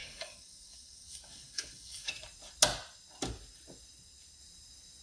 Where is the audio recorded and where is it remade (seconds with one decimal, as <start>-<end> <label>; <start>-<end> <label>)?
0.0-2.1 remade; 2.1-5.0 recorded